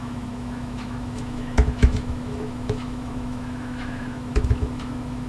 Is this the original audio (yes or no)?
no